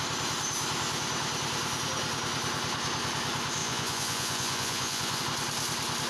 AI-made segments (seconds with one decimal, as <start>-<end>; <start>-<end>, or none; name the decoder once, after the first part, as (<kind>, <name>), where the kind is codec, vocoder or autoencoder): 3.6-5.2 (vocoder, Vocos)